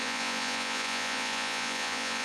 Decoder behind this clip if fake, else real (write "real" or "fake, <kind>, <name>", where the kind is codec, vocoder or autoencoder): fake, vocoder, Vocos